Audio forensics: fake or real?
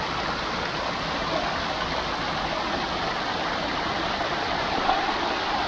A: real